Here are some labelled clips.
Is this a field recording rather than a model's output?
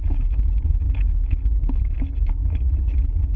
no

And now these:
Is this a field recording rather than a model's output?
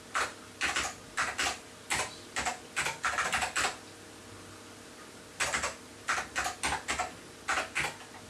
yes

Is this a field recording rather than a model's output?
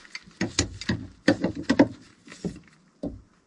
yes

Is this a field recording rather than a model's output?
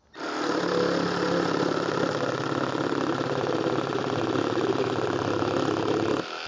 yes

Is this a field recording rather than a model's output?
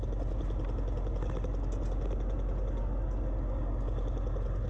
yes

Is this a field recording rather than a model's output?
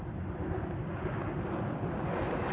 yes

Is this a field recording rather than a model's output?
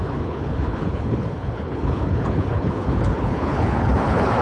no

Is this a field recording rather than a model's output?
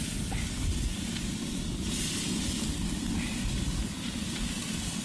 yes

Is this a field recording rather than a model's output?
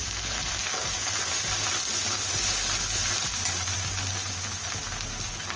yes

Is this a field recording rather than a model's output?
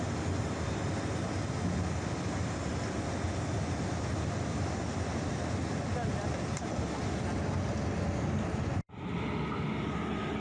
yes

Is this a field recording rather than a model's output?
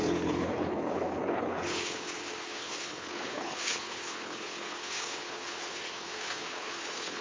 no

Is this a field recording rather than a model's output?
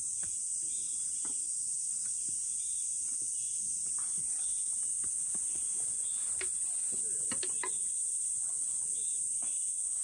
yes